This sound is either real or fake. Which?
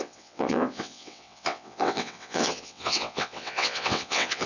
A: fake